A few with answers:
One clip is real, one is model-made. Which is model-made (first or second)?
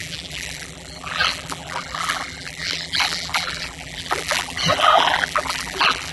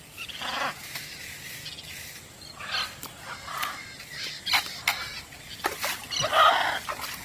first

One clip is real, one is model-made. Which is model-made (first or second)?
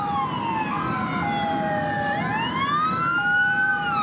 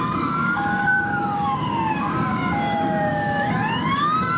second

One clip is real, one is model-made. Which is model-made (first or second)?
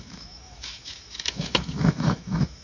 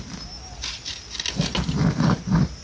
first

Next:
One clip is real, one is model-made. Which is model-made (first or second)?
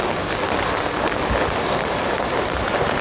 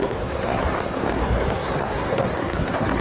second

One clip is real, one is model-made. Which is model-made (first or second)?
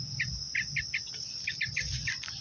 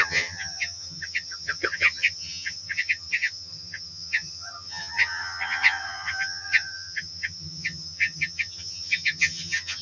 second